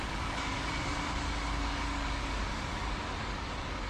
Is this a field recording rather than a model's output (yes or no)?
no